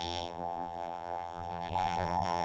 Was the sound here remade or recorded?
remade